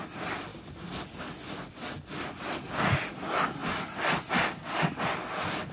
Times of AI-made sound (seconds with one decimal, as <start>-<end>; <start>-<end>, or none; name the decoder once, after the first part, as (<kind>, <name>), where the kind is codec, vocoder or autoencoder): none